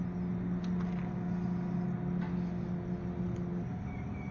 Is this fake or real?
real